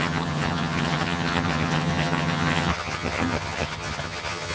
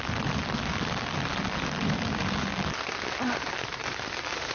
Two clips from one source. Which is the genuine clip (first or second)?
second